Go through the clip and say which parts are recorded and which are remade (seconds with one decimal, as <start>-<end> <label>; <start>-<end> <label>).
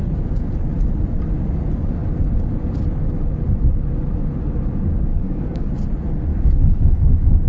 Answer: 0.0-5.1 recorded; 5.1-5.7 remade; 5.7-6.3 recorded; 6.3-7.5 remade